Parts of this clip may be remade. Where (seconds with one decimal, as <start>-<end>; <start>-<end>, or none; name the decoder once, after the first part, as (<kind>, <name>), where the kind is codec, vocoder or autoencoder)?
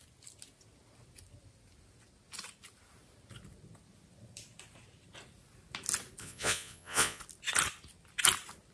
6.2-7.2 (vocoder, Vocos)